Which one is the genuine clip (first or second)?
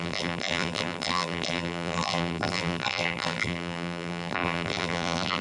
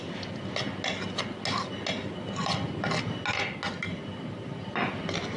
second